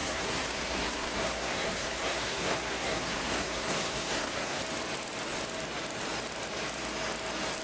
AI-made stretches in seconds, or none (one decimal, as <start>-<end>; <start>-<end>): 0.0-4.6